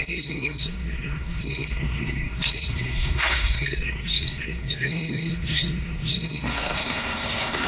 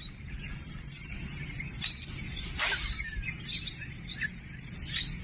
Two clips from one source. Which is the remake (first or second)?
first